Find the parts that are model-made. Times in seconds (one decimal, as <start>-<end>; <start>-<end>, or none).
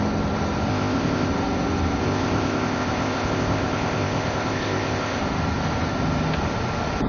0.7-1.3; 2.0-5.2